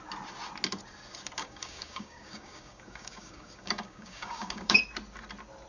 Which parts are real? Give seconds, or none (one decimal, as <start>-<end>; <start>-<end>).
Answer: 0.0-1.4; 4.8-5.7